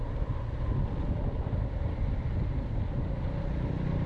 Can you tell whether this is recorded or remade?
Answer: remade